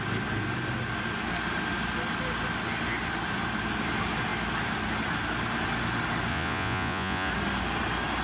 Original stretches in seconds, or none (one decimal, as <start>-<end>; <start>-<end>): 0.0-6.3; 7.3-8.2